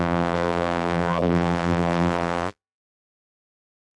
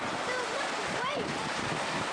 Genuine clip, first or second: second